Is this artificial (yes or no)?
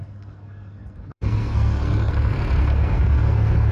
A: yes